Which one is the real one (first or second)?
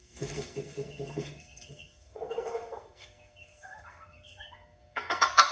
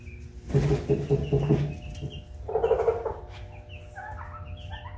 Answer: second